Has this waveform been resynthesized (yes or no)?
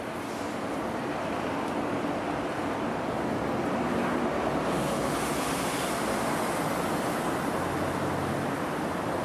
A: no